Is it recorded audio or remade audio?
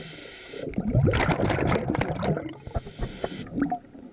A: recorded